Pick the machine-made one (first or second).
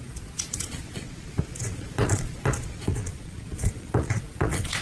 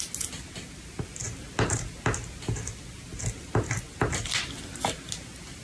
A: first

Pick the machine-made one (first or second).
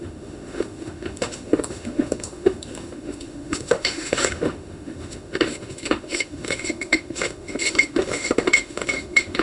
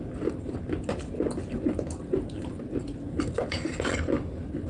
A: first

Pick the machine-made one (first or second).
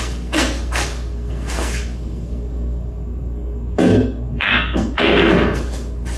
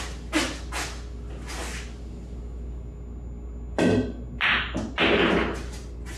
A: first